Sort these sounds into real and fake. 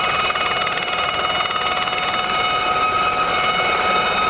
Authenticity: real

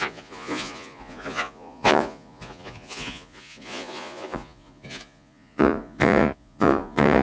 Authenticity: fake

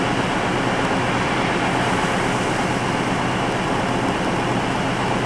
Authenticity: real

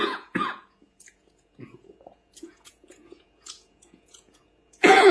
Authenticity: fake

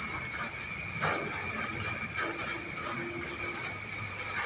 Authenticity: real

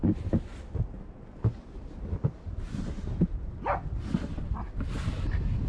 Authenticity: real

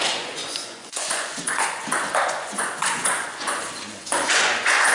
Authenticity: fake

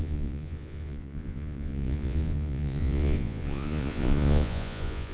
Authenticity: fake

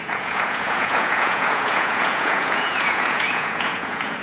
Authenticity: fake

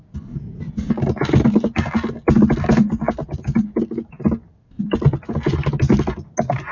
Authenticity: real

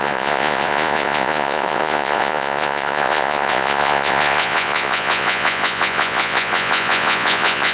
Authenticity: fake